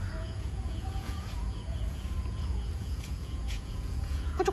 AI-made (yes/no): yes